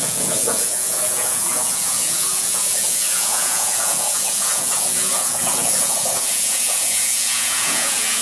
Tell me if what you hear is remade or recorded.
remade